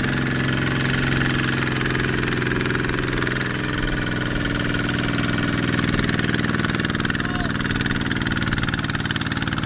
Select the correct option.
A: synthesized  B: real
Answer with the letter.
B